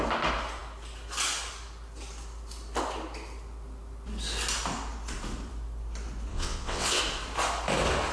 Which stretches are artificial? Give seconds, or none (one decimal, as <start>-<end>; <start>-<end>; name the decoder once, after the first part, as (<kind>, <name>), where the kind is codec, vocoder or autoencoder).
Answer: 6.3-7.0 (vocoder, WaveNeXt)